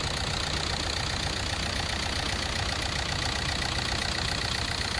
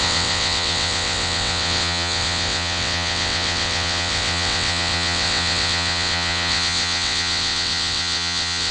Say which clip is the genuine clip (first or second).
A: first